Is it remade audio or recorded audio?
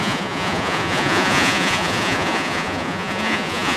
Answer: remade